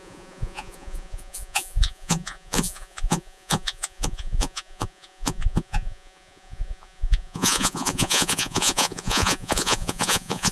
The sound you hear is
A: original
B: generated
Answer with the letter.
B